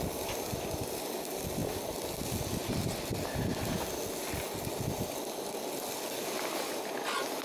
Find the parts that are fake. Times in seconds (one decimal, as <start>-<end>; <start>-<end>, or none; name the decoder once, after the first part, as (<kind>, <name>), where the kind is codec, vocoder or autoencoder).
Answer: none